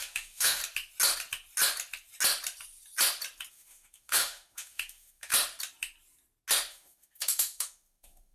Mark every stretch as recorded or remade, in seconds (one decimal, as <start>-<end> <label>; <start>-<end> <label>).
0.0-0.6 remade; 0.6-3.5 recorded; 3.5-5.3 remade; 5.3-6.7 recorded; 6.7-8.3 remade